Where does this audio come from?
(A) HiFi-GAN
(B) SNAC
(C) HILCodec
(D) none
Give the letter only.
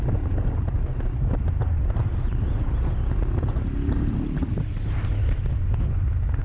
D